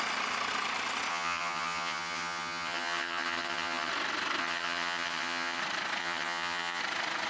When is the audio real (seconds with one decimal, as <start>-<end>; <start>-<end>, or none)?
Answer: 0.0-1.1; 3.9-4.4; 5.6-6.0; 6.8-7.3